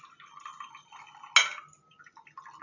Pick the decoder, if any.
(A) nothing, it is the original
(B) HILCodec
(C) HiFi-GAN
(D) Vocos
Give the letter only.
A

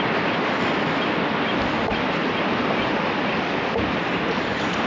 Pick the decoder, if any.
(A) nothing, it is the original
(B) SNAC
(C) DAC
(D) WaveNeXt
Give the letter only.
A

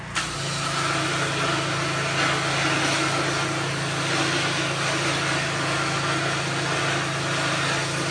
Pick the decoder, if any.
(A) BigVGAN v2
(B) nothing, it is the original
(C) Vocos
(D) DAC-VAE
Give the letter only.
B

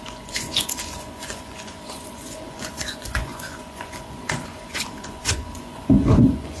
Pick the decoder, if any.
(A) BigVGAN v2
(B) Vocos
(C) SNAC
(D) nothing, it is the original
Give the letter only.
B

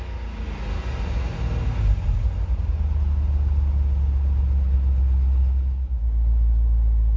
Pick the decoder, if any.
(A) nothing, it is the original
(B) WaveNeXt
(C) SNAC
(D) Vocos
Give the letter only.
A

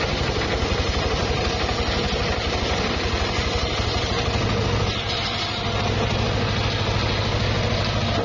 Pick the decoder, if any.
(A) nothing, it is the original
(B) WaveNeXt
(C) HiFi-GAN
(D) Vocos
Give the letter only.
A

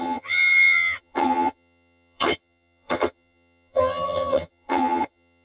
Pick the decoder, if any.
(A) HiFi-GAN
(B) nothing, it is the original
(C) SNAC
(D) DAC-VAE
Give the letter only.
A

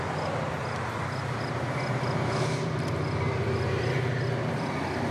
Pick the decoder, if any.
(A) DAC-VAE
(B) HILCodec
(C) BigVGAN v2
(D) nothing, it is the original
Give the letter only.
C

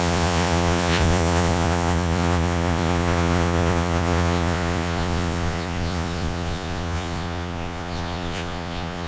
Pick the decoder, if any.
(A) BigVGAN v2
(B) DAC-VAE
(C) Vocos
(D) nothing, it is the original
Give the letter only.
C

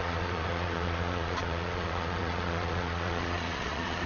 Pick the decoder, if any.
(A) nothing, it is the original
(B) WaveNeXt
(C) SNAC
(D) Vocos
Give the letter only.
D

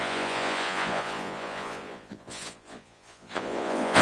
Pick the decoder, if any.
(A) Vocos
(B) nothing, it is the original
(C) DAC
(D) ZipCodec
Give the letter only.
A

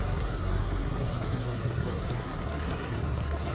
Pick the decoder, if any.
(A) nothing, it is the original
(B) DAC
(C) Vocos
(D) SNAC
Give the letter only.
D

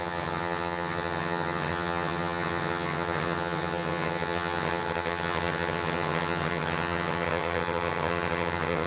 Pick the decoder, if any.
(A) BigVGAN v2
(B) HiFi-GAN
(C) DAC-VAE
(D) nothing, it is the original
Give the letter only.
B